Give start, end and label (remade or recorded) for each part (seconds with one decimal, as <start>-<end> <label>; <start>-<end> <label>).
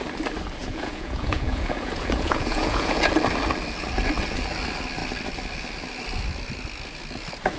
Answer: 0.0-0.6 recorded; 0.6-3.1 remade; 3.1-7.6 recorded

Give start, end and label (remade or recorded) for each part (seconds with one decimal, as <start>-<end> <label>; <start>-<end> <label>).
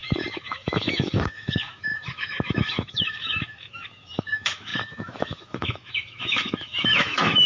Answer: 0.0-7.5 remade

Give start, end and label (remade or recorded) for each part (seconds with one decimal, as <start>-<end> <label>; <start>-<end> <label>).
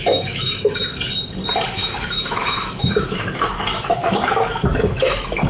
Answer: 0.0-0.9 remade; 0.9-1.7 recorded; 1.7-5.5 remade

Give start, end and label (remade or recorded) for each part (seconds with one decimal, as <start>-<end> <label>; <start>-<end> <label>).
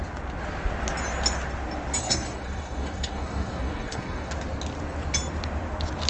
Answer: 0.0-2.0 recorded; 2.0-4.3 remade; 4.3-6.1 recorded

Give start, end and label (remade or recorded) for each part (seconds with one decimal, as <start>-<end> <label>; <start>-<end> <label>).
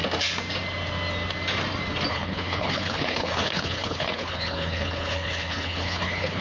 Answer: 0.0-2.1 recorded; 2.1-6.4 remade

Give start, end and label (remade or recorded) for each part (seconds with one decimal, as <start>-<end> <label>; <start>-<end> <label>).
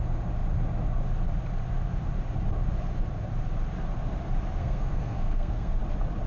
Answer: 0.0-4.6 recorded; 4.6-5.8 remade; 5.8-6.3 recorded